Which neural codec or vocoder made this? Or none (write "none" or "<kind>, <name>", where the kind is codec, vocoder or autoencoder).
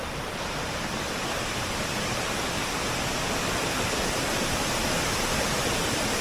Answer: vocoder, BigVGAN v2